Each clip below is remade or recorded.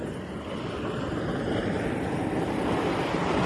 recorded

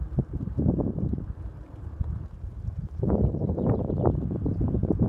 remade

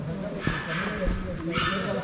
recorded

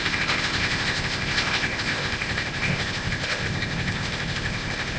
remade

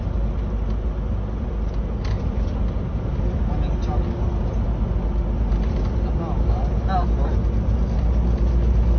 recorded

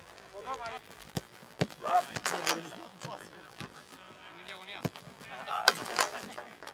remade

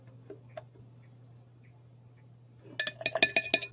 recorded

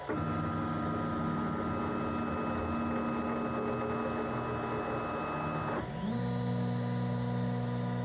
recorded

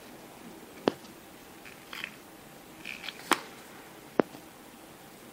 recorded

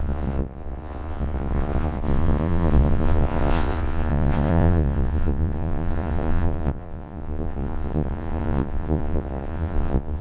remade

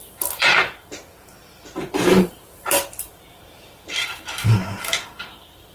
remade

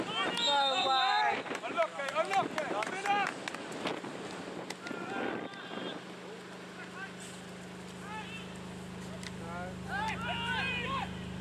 recorded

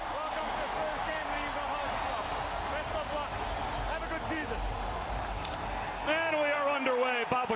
recorded